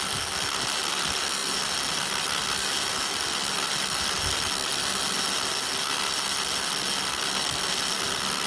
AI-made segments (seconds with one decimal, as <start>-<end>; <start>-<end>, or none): none